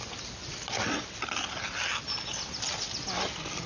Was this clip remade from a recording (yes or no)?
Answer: no